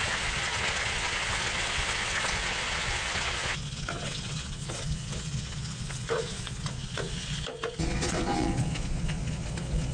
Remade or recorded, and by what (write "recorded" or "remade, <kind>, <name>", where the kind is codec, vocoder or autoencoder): remade, vocoder, Vocos